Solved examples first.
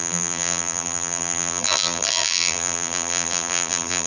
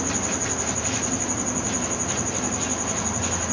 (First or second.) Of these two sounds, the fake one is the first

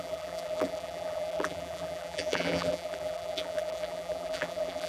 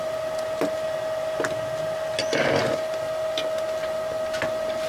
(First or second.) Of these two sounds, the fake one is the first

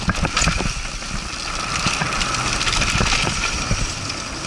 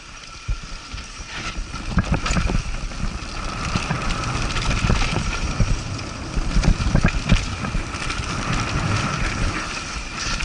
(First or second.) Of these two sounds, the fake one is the second